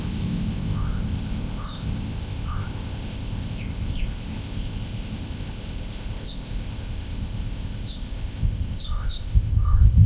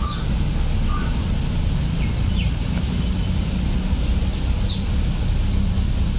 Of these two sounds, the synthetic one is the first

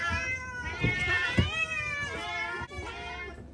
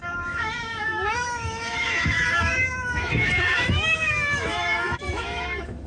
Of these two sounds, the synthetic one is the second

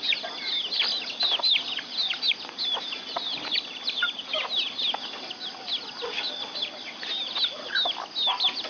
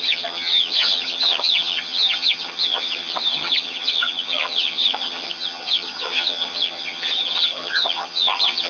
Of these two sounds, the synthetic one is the second